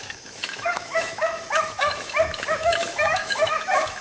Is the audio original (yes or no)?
no